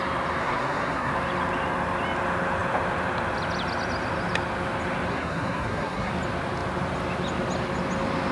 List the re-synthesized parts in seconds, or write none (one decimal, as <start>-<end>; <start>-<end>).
0.4-1.1; 5.1-6.1